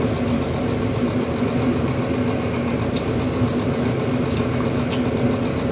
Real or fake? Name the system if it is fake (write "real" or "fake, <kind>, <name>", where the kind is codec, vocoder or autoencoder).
real